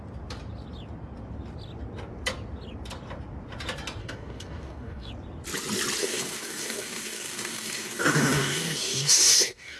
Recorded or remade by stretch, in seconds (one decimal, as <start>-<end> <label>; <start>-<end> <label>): 0.0-4.0 recorded; 4.0-5.1 remade; 5.1-6.0 recorded; 6.0-9.8 remade